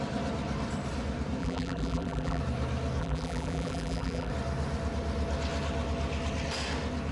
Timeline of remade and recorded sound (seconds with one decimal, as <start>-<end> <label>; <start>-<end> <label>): 0.0-1.4 recorded; 1.4-2.4 remade; 2.4-3.0 recorded; 3.0-4.3 remade; 4.3-7.1 recorded